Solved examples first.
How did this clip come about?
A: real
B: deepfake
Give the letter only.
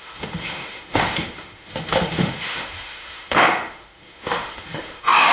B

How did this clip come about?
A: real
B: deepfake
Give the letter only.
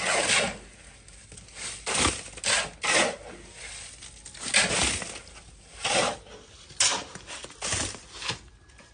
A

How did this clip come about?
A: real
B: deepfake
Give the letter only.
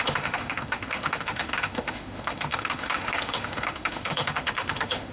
B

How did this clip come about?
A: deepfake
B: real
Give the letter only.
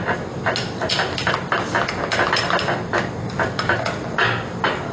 B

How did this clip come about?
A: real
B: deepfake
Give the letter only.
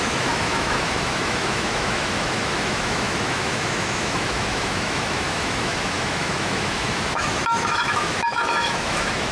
B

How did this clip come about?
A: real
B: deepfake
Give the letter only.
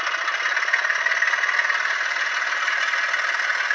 A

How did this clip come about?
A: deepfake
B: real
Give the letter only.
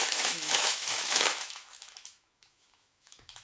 A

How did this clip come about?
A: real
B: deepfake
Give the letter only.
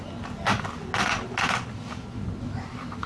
A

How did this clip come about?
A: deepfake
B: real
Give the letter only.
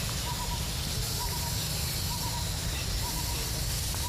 B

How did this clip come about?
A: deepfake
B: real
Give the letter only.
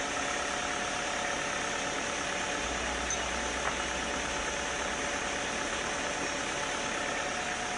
B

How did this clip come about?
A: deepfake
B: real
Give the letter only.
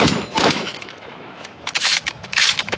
A